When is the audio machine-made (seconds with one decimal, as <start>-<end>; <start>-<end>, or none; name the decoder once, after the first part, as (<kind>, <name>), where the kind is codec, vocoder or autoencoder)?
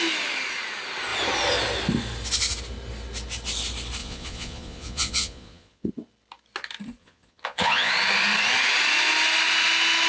4.0-5.9 (vocoder, Vocos); 7.0-7.9